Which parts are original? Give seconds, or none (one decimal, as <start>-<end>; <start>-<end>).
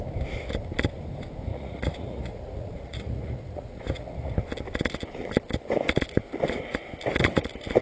0.0-1.5; 4.3-7.8